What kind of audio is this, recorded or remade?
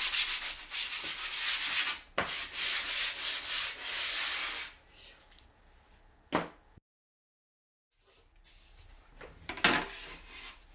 recorded